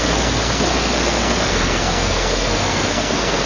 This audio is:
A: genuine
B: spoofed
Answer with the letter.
B